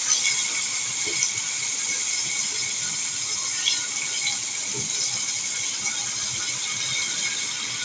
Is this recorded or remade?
recorded